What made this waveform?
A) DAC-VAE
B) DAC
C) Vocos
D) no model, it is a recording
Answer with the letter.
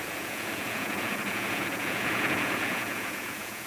C